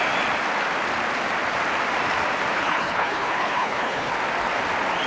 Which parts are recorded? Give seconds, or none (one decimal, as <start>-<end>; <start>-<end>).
0.0-2.5; 4.1-5.1